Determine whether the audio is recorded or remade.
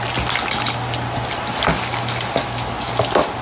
recorded